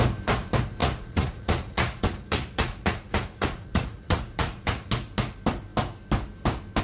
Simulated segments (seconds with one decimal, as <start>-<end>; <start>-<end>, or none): 0.8-4.9